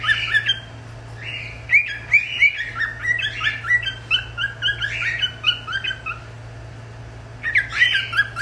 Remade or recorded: recorded